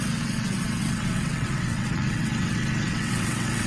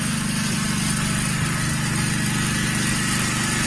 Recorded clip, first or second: second